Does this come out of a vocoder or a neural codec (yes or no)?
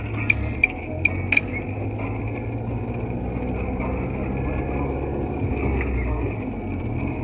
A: no